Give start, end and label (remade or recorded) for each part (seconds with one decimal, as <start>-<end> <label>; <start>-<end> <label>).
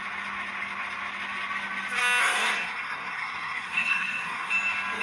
0.0-2.2 recorded; 2.2-4.5 remade; 4.5-5.0 recorded